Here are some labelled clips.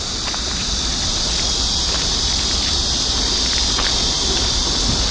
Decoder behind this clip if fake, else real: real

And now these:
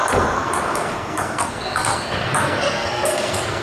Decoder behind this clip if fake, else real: fake, codec, SNAC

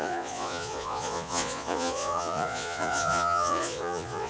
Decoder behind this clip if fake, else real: fake, vocoder, Vocos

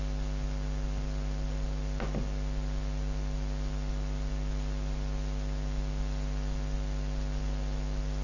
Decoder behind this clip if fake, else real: real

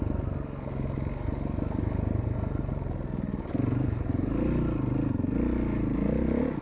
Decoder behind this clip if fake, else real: real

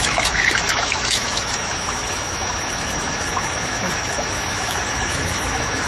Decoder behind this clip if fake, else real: fake, autoencoder, DAC-VAE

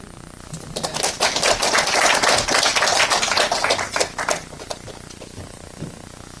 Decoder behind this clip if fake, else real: real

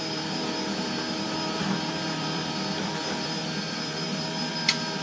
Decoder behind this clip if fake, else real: fake, vocoder, BigVGAN v2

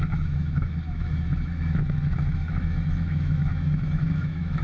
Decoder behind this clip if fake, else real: fake, autoencoder, DAC-VAE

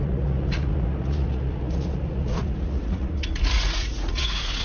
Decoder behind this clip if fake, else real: fake, vocoder, Vocos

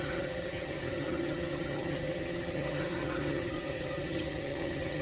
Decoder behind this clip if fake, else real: fake, vocoder, HiFi-GAN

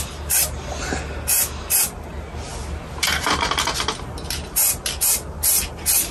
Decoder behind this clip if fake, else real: real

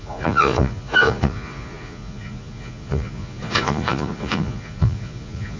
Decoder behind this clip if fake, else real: fake, vocoder, Vocos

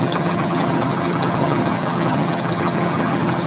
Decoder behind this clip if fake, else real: fake, vocoder, HiFi-GAN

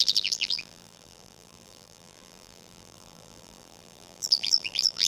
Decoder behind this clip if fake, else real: fake, vocoder, BigVGAN v2